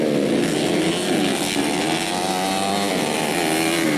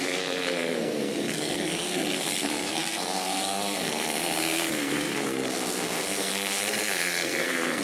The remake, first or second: second